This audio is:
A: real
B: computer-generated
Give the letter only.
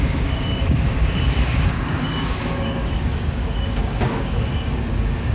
B